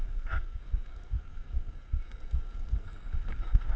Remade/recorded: remade